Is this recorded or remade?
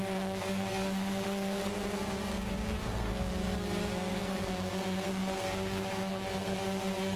remade